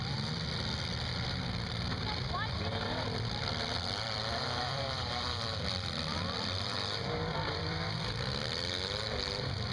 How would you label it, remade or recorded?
remade